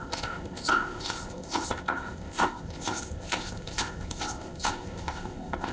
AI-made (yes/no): yes